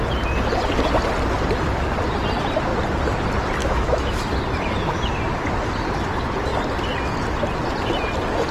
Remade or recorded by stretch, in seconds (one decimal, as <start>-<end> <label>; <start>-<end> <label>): 0.0-3.6 recorded; 3.6-4.2 remade; 4.2-8.5 recorded